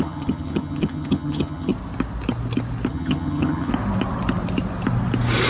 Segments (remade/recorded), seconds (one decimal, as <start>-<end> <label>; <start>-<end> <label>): 0.0-1.7 remade; 1.7-2.9 recorded; 2.9-3.7 remade; 3.7-5.5 recorded